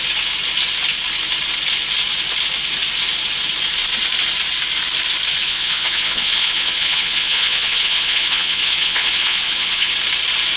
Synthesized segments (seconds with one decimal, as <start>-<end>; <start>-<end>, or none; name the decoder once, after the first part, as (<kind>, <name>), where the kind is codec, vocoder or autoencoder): 5.4-9.9 (vocoder, Vocos)